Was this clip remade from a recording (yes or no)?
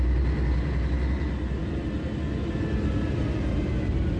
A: no